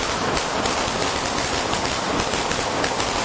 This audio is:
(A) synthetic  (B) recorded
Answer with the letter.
B